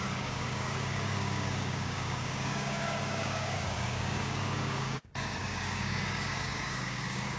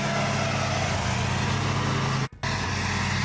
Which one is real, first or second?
second